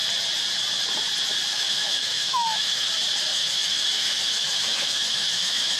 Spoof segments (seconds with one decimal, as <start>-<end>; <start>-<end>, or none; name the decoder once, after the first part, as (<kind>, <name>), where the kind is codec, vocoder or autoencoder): 1.5-2.9 (autoencoder, DAC-VAE); 3.3-5.8

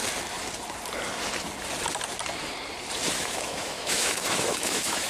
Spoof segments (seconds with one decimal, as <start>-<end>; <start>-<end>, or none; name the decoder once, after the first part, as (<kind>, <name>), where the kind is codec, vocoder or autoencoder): 3.1-5.1 (autoencoder, DAC-VAE)

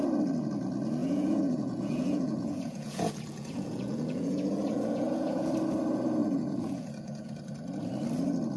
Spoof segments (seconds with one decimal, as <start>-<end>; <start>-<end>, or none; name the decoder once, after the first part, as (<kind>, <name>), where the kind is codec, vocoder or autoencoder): 1.0-5.5 (vocoder, Vocos); 6.2-7.4

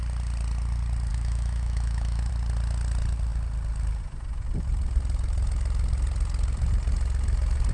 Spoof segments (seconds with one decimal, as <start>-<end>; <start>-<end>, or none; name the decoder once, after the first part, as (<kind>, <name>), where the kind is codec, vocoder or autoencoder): 1.1-2.3 (autoencoder, DAC-VAE)

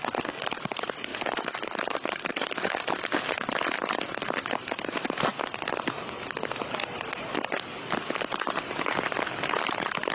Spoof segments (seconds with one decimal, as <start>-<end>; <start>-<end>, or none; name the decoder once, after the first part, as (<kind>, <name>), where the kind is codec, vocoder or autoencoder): none

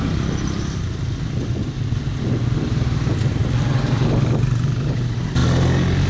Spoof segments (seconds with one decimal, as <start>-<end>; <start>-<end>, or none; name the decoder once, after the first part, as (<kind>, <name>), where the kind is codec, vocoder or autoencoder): none

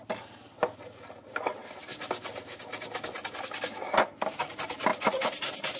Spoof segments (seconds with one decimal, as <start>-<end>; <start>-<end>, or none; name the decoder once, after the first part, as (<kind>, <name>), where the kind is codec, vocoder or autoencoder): none

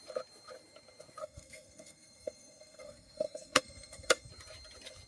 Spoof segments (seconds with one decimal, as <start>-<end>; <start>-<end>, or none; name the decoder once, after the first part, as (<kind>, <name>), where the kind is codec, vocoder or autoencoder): 1.2-4.3 (codec, SNAC)